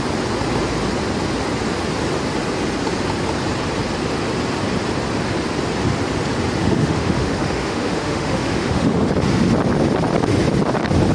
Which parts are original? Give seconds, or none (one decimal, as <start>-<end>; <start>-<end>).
0.0-6.6; 9.1-11.1